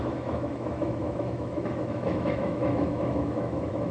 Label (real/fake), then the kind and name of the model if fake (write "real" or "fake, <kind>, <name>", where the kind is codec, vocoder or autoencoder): fake, autoencoder, DAC-VAE